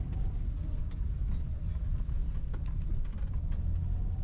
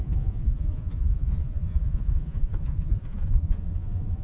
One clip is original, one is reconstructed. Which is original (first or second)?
first